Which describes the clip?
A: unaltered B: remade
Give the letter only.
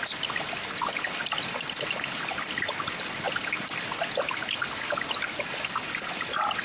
A